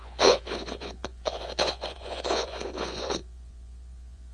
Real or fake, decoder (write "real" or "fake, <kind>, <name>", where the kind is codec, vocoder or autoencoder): fake, vocoder, Vocos